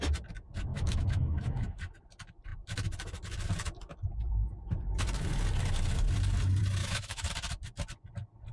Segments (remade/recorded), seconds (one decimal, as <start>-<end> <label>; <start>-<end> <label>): 0.0-0.7 recorded; 0.7-1.8 remade; 1.8-6.8 recorded; 6.8-7.3 remade; 7.3-8.5 recorded